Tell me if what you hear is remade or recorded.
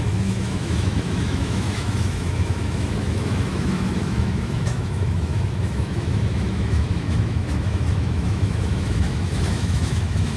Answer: remade